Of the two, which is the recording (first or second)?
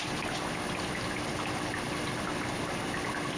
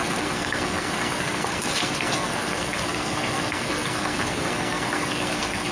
first